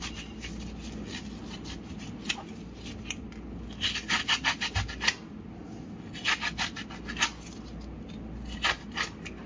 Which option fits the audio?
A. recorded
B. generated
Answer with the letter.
A